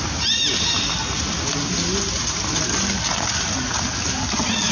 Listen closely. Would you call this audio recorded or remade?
recorded